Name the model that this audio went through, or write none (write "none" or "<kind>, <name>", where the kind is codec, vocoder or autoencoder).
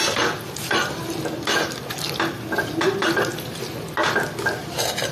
none